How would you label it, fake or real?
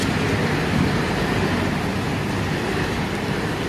real